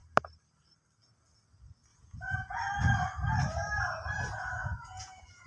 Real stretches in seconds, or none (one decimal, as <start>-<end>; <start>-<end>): 0.0-1.9; 2.6-4.6